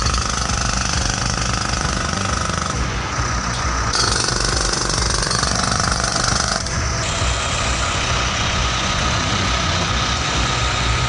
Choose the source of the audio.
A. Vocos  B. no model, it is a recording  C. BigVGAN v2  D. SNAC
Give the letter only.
A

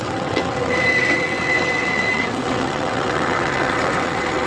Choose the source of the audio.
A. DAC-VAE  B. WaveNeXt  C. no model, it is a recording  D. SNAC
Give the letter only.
B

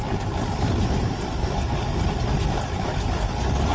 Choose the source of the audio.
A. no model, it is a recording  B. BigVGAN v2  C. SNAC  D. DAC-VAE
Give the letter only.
A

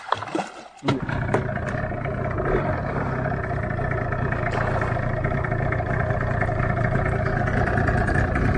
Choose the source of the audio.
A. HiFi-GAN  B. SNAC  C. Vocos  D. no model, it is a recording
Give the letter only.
D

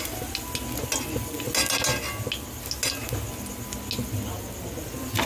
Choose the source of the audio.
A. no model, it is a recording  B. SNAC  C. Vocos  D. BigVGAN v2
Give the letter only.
A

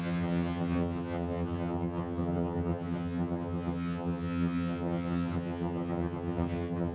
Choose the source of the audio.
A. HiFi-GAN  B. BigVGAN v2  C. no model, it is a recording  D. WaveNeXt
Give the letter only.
A